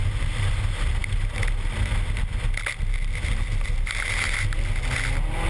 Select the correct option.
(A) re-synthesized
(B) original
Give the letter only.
B